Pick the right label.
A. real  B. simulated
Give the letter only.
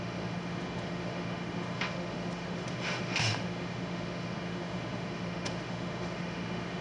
B